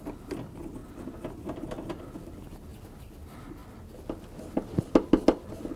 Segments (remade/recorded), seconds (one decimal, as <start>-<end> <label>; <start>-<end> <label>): 0.0-5.8 recorded